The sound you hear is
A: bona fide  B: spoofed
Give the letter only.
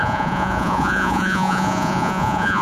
B